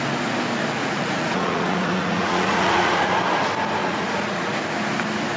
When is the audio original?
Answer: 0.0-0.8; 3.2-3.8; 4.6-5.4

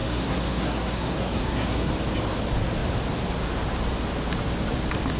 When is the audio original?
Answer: 1.9-5.2

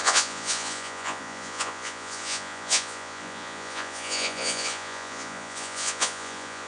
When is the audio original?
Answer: none

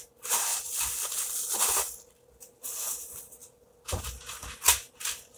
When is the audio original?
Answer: 0.0-5.4

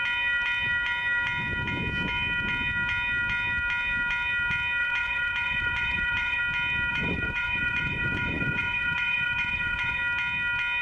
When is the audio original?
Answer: 0.0-4.8; 6.4-6.9; 10.0-10.8

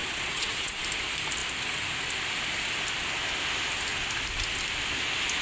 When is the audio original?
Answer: 0.8-5.4

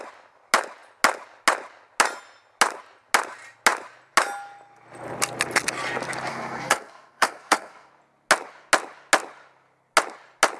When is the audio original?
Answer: 0.0-6.3; 7.9-10.6

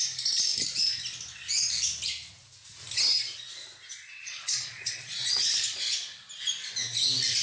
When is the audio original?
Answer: 0.0-3.9; 5.8-7.4